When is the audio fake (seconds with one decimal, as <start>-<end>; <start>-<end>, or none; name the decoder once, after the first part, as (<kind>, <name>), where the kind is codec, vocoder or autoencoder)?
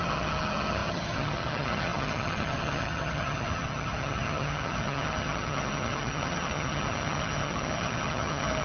0.0-8.6 (vocoder, HiFi-GAN)